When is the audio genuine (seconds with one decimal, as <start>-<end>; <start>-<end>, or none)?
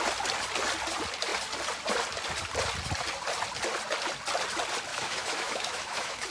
0.0-4.9